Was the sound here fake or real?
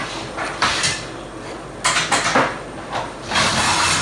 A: real